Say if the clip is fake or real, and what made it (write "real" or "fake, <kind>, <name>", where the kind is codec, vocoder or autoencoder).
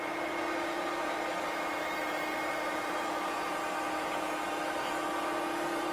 fake, vocoder, BigVGAN v2